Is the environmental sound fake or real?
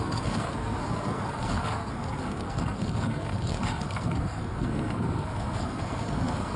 fake